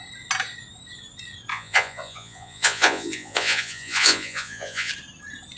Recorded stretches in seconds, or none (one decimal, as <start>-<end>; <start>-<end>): 0.0-1.5; 4.9-5.6